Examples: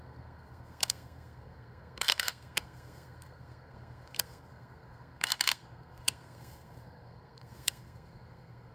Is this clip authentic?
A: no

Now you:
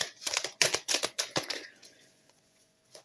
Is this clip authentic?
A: no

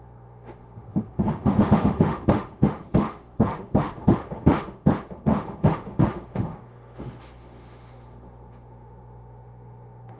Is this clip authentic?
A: no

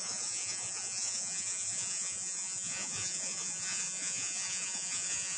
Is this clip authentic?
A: no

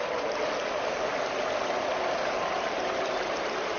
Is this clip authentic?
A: yes